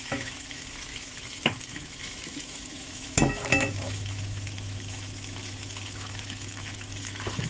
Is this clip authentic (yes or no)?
no